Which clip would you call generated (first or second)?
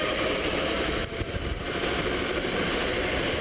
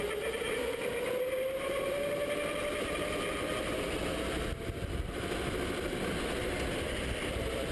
first